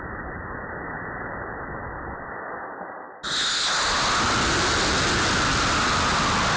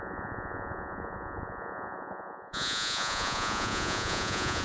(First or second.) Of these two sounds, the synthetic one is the second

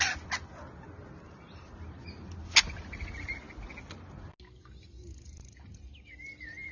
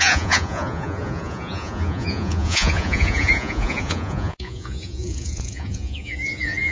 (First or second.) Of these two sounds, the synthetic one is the second